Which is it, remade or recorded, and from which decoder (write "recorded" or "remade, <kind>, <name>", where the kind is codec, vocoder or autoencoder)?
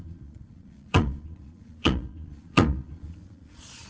remade, vocoder, Vocos